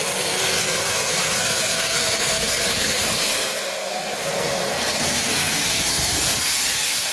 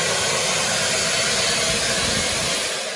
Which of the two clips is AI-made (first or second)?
first